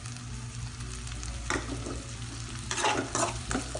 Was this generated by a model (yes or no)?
no